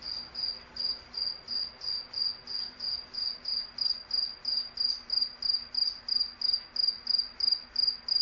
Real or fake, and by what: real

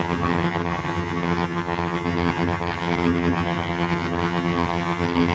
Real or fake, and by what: fake, vocoder, HiFi-GAN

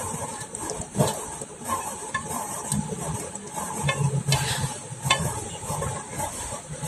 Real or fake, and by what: fake, vocoder, BigVGAN v2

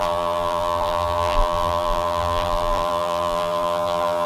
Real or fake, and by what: fake, vocoder, BigVGAN v2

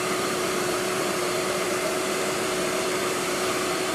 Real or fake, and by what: fake, vocoder, BigVGAN v2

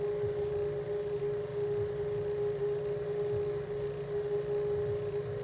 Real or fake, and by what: real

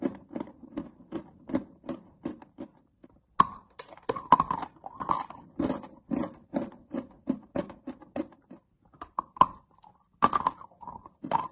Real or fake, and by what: real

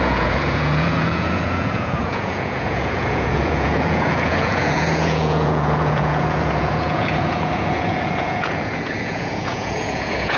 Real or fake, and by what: fake, vocoder, Vocos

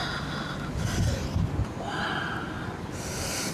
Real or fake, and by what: real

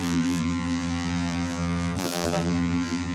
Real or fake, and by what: fake, vocoder, BigVGAN v2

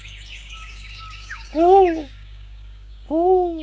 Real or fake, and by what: fake, codec, DAC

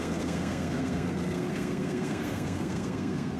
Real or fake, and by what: fake, codec, SNAC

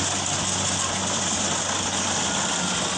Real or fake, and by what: real